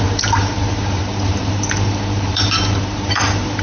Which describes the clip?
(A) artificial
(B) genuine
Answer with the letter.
A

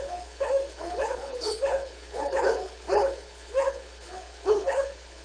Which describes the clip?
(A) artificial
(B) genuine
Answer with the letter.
A